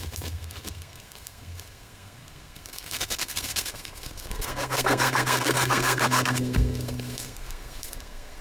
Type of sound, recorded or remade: remade